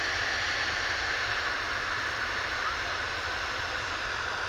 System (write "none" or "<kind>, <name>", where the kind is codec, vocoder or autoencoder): vocoder, BigVGAN v2